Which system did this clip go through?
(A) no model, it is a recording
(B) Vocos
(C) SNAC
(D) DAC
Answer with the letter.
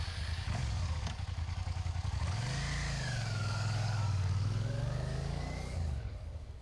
D